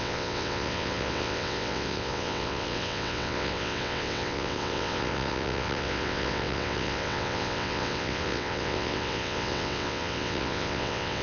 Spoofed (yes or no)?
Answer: yes